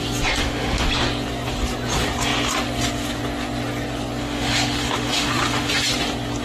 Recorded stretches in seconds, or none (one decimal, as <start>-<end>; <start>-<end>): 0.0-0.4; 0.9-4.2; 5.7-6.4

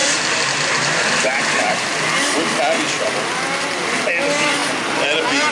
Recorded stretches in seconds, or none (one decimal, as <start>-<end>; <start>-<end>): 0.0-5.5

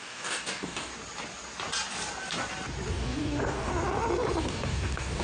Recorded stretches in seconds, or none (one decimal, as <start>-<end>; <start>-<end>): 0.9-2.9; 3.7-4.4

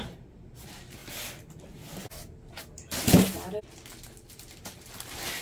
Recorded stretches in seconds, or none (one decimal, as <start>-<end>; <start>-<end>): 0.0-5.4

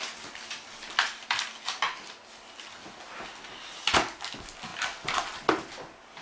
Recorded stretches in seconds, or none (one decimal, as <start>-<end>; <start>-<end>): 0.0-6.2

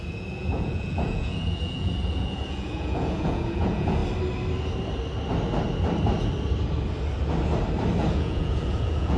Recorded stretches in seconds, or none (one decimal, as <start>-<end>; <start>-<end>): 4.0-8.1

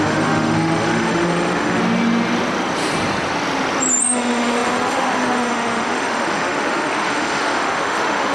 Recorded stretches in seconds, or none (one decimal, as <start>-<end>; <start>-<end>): 1.8-4.0

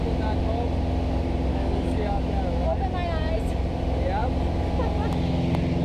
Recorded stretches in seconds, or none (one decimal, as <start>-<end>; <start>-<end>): 0.0-1.5; 2.2-5.8